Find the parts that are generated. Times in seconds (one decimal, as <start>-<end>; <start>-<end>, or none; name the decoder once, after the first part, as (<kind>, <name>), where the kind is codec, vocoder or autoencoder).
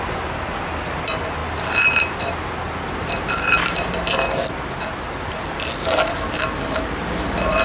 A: none